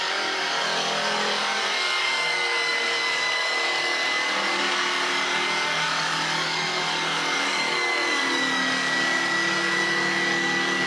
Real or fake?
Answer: fake